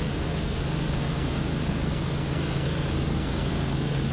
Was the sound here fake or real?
fake